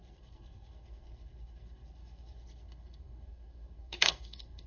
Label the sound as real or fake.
fake